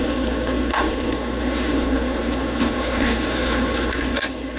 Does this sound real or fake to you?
fake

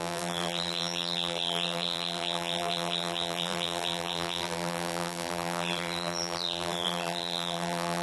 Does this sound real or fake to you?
fake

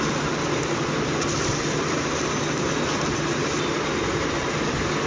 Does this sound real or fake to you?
real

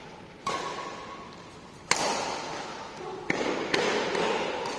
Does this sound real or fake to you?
real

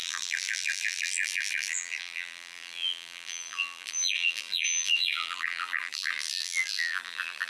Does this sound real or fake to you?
fake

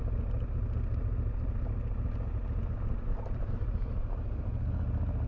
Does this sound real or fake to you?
real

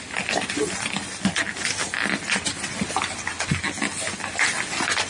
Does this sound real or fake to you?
real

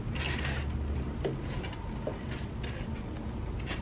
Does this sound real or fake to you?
real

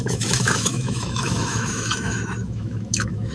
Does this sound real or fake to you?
fake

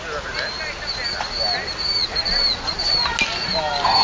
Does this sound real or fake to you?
real